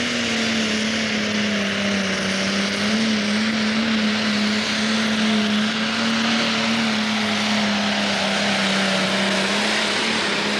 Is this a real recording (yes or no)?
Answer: yes